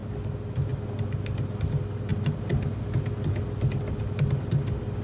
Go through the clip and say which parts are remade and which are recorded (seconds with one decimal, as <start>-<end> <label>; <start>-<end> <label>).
0.0-5.0 recorded